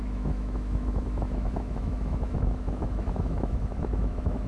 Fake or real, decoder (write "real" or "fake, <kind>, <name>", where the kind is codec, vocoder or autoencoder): fake, autoencoder, DAC-VAE